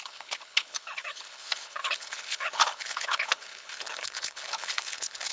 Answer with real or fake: fake